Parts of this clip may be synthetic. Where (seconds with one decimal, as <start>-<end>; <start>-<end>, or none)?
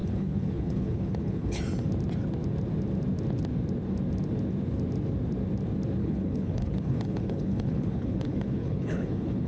0.0-1.6; 6.0-9.5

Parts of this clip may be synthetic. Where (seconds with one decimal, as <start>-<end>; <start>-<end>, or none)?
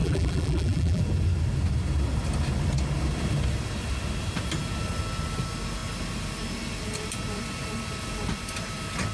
0.0-1.0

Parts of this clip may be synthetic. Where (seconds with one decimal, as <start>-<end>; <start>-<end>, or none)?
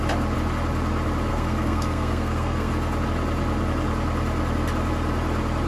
1.3-2.7